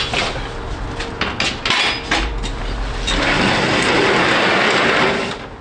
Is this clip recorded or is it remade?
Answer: recorded